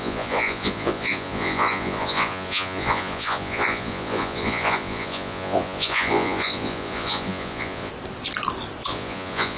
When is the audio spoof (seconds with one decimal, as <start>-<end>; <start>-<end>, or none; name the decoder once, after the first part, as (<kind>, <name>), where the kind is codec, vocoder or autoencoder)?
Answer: 0.0-7.9 (vocoder, Vocos); 8.9-9.6